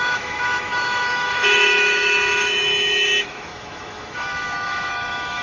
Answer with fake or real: fake